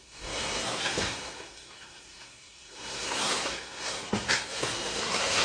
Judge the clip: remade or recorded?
remade